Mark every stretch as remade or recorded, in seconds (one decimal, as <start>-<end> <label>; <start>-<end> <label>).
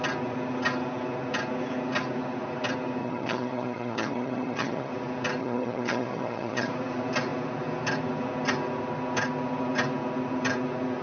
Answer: 0.0-3.0 recorded; 3.0-4.9 remade; 4.9-5.4 recorded; 5.4-6.7 remade; 6.7-11.0 recorded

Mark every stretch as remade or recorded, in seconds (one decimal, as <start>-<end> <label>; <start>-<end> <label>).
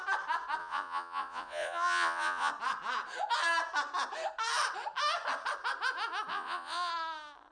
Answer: 0.0-0.6 recorded; 0.6-2.5 remade; 2.5-6.3 recorded; 6.3-6.9 remade; 6.9-7.5 recorded